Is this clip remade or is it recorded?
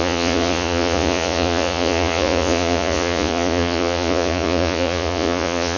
remade